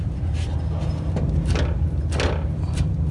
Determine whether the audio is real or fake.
real